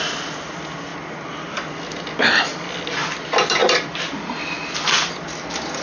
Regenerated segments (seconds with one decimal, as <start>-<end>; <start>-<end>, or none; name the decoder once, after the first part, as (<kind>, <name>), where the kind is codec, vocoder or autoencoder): 3.6-4.4 (vocoder, BigVGAN v2)

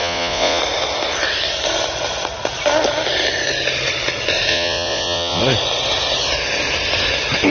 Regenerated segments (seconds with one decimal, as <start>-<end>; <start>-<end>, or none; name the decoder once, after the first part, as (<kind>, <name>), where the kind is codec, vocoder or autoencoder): 0.0-0.6 (vocoder, Vocos); 4.5-5.4

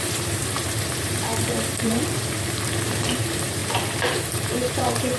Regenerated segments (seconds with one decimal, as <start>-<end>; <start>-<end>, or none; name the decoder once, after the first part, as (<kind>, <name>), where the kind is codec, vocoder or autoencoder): 0.0-5.2 (vocoder, BigVGAN v2)

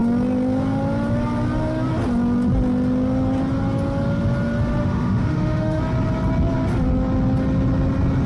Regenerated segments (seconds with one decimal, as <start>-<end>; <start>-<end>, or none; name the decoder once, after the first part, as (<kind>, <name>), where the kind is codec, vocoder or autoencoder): 4.8-5.8 (autoencoder, DAC-VAE)

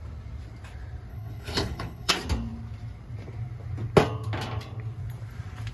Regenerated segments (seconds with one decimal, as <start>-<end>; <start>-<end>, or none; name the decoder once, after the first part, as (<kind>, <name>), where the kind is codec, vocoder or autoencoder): 1.1-2.1 (codec, HILCodec)

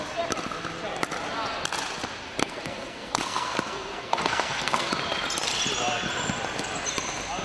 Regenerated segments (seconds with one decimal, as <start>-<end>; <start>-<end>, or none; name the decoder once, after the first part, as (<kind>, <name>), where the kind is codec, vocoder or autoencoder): 2.4-4.9 (codec, SNAC)